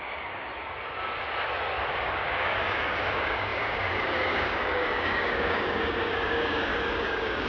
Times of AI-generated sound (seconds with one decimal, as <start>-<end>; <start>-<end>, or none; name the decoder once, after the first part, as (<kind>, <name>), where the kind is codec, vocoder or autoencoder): 0.0-0.5 (codec, DAC); 1.9-7.5